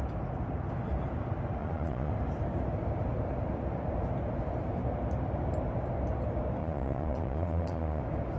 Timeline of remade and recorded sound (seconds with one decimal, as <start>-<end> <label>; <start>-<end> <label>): 0.0-1.6 recorded; 1.6-2.1 remade; 2.1-6.6 recorded; 6.6-8.0 remade; 8.0-8.4 recorded